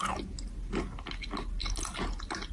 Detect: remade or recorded recorded